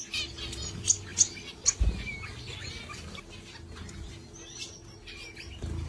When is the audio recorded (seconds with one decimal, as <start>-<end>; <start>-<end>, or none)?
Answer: 0.0-5.9